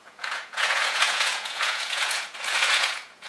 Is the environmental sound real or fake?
fake